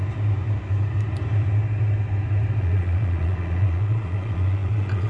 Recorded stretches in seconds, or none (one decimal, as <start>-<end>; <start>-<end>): 0.0-2.6